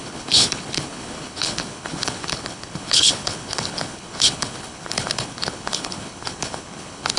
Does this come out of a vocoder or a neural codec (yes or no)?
yes